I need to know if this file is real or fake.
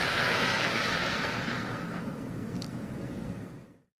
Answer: fake